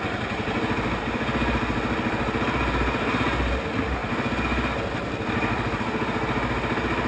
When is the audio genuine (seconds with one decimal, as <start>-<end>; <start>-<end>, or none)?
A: 0.0-7.1